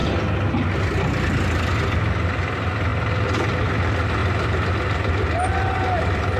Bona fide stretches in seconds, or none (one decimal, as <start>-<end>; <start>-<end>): 0.0-2.9; 3.6-4.2; 4.7-6.4